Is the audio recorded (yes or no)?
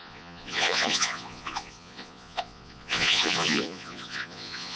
no